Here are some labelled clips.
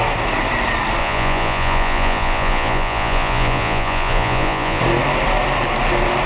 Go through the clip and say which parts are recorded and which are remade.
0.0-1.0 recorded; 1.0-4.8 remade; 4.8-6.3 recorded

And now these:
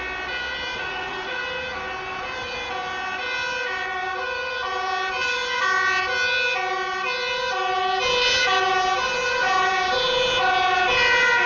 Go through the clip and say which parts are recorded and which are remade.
0.0-0.7 recorded; 0.7-1.4 remade; 1.4-11.5 recorded

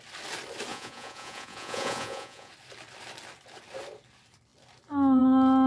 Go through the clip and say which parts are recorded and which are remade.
0.0-0.7 recorded; 0.7-2.5 remade; 2.5-5.7 recorded

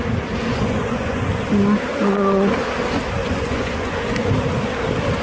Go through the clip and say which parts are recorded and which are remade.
0.0-0.5 recorded; 0.5-1.3 remade; 1.3-3.2 recorded; 3.2-4.3 remade; 4.3-5.2 recorded